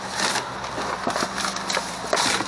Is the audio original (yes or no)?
yes